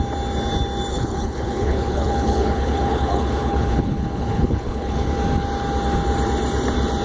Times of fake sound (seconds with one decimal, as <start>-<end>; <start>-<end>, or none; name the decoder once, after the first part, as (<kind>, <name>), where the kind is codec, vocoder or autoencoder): 0.9-5.1 (codec, HILCodec)

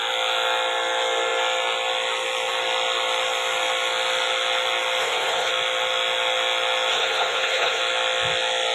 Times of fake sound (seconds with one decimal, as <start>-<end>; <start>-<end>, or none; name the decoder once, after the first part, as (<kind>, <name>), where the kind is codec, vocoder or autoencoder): 5.0-5.5 (codec, HILCodec); 6.9-7.8

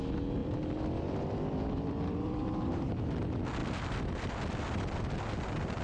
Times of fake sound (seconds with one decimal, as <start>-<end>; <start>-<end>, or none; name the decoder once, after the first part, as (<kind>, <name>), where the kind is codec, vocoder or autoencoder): 0.4-3.0 (vocoder, BigVGAN v2); 3.6-5.1

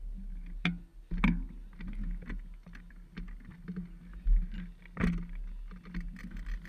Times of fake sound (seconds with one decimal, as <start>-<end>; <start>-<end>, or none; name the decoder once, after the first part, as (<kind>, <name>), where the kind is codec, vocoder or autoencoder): none